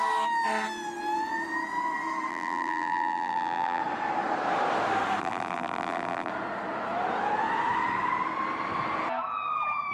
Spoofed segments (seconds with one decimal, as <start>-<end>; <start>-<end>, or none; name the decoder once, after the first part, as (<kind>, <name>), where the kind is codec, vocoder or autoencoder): 2.3-3.8 (vocoder, BigVGAN v2); 5.2-6.3